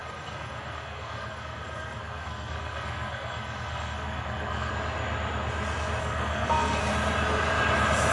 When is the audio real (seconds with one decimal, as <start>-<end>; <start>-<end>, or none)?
4.7-6.0; 6.8-8.1